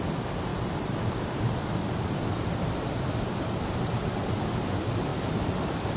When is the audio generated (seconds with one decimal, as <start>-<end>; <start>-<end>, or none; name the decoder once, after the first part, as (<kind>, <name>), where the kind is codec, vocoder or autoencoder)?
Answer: 0.5-4.1 (vocoder, BigVGAN v2); 5.1-6.0